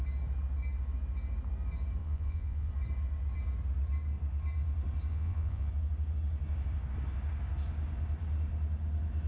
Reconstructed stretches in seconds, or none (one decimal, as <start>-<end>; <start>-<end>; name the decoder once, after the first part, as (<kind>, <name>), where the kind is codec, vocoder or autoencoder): 2.0-2.7 (vocoder, Vocos); 5.1-5.7